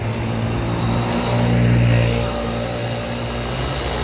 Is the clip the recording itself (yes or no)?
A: yes